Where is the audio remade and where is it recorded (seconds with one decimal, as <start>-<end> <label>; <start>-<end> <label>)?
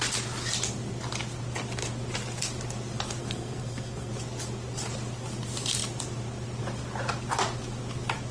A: 0.0-3.2 recorded; 3.2-4.1 remade; 4.1-8.3 recorded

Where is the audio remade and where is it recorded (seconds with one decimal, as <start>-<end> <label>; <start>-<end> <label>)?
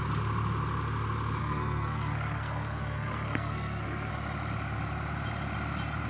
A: 0.0-1.4 recorded; 1.4-4.1 remade; 4.1-6.1 recorded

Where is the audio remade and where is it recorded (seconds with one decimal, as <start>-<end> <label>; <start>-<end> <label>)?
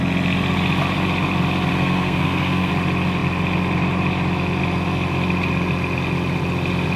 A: 0.0-1.7 recorded; 1.7-2.7 remade; 2.7-7.0 recorded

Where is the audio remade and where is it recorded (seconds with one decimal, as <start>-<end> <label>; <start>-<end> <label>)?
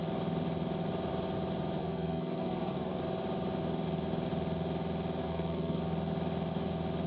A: 0.0-1.8 recorded; 1.8-3.0 remade; 3.0-5.2 recorded; 5.2-5.8 remade; 5.8-7.1 recorded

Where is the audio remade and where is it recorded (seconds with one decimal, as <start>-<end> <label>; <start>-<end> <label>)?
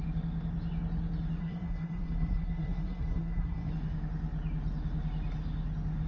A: 0.0-1.4 recorded; 1.4-3.7 remade; 3.7-6.1 recorded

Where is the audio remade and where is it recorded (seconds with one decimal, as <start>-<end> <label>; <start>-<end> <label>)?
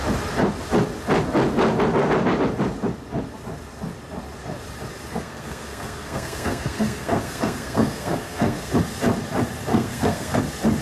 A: 0.0-5.1 recorded; 5.1-8.7 remade; 8.7-9.7 recorded; 9.7-10.4 remade; 10.4-10.8 recorded